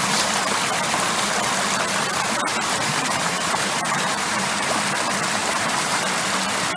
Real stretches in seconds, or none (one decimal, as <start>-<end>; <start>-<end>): 0.0-2.5; 4.7-5.4; 6.0-6.8